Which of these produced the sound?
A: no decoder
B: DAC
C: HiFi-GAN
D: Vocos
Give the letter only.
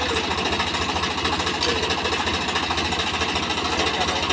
A